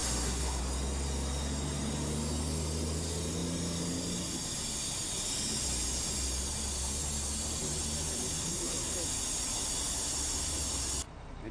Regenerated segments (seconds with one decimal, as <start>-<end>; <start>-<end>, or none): 0.0-0.6; 8.4-8.9